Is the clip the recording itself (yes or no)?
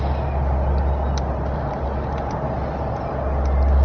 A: yes